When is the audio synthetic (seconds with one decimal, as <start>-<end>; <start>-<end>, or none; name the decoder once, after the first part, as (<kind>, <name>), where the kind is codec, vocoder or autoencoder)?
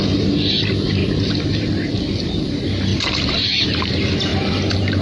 1.0-2.0 (vocoder, BigVGAN v2); 2.9-3.8; 4.3-5.0